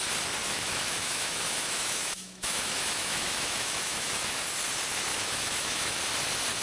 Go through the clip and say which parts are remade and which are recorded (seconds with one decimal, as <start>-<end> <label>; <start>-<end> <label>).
0.0-0.4 recorded; 0.4-4.4 remade; 4.4-5.1 recorded; 5.1-6.0 remade; 6.0-6.6 recorded